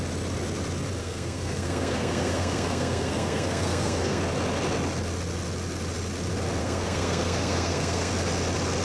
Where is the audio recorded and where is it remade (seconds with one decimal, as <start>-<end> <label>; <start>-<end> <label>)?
0.0-1.0 recorded; 1.0-4.2 remade; 4.2-6.6 recorded; 6.6-8.1 remade; 8.1-8.8 recorded